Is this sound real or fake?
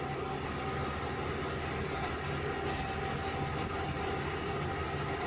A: real